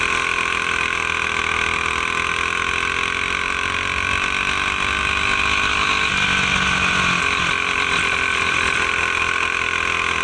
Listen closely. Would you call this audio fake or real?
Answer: real